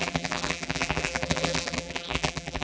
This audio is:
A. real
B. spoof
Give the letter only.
B